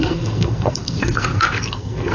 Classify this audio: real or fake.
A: fake